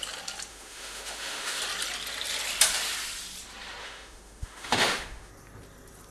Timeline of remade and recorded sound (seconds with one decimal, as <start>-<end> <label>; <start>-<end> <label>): 0.0-0.5 recorded; 0.5-1.6 remade; 1.6-3.8 recorded; 3.8-5.3 remade; 5.3-6.1 recorded